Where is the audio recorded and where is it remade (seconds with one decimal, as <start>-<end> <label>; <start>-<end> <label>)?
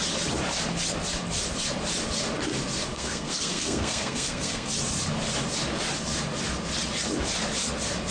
0.0-2.9 recorded; 2.9-4.7 remade; 4.7-8.1 recorded